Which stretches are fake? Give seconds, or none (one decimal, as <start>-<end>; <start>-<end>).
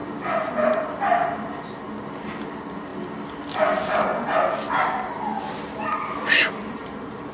none